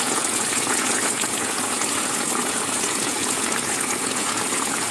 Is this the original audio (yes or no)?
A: no